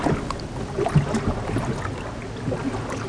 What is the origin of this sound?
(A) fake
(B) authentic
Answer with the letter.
B